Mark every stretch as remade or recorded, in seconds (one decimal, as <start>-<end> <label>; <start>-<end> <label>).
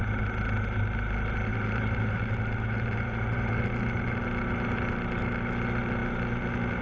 0.0-1.5 recorded; 1.5-3.6 remade; 3.6-6.8 recorded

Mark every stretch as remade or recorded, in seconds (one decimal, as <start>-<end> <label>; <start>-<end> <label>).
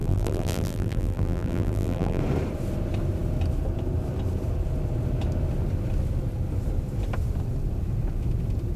0.0-2.2 remade; 2.2-8.8 recorded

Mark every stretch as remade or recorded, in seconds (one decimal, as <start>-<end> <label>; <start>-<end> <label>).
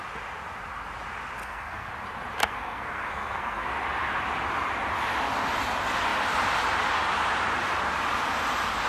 0.0-1.4 recorded; 1.4-1.9 remade; 1.9-2.4 recorded; 2.4-3.7 remade; 3.7-8.9 recorded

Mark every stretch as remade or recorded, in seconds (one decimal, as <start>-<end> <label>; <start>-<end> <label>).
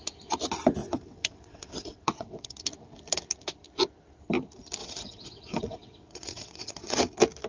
0.0-0.8 recorded; 0.8-2.6 remade; 2.6-4.8 recorded; 4.8-7.0 remade; 7.0-7.5 recorded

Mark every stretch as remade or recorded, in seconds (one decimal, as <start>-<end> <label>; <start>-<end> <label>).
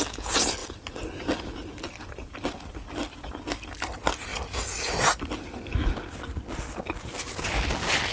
0.0-4.3 recorded; 4.3-4.9 remade; 4.9-8.1 recorded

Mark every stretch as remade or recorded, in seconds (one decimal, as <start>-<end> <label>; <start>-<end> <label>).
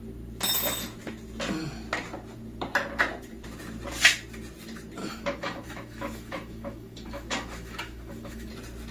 0.0-5.0 recorded; 5.0-8.5 remade; 8.5-8.9 recorded